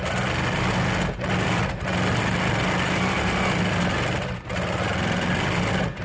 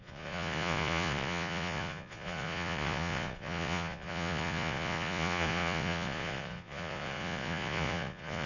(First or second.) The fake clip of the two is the second